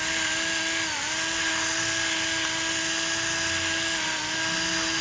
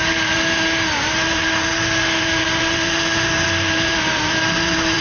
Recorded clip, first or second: first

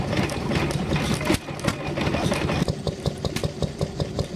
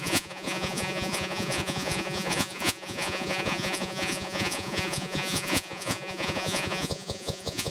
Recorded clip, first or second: first